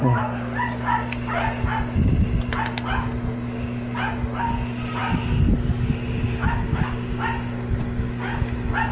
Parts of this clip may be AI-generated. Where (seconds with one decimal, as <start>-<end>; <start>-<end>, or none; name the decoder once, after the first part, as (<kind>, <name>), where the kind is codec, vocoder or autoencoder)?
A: none